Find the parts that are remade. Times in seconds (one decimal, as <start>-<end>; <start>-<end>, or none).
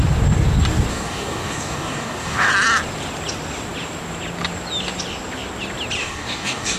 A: 0.9-2.5; 6.0-6.8